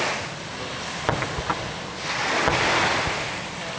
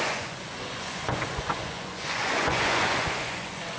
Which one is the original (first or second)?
first